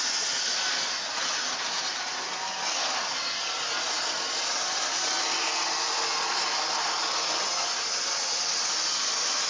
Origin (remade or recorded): recorded